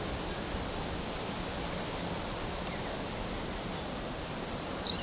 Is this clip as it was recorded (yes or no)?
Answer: yes